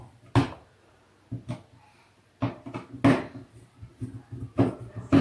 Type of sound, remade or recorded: recorded